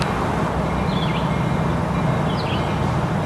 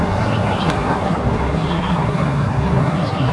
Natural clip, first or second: first